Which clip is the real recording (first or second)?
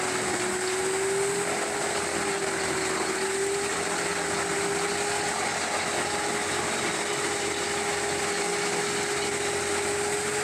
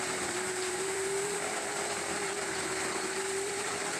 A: first